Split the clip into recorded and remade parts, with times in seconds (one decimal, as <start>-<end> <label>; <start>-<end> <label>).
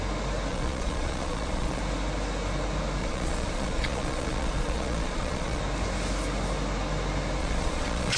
0.0-0.5 recorded; 0.5-1.8 remade; 1.8-3.0 recorded; 3.0-5.6 remade; 5.6-7.4 recorded; 7.4-8.2 remade